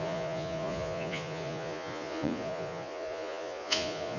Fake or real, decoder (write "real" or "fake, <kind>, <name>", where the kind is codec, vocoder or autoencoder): fake, vocoder, Vocos